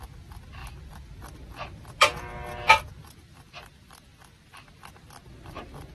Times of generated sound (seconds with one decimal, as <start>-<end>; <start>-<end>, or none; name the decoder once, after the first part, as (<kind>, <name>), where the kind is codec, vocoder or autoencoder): none